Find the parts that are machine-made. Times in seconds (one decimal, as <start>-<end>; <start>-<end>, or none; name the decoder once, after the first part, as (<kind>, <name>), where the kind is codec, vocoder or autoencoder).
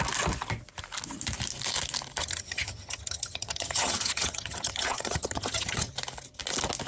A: 2.2-5.9 (vocoder, HiFi-GAN)